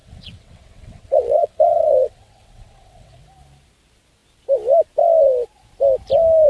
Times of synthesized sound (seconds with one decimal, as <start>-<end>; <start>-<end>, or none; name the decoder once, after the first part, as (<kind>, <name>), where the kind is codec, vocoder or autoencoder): 0.0-3.3 (vocoder, WaveNeXt)